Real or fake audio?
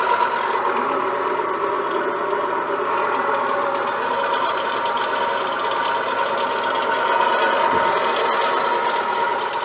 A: real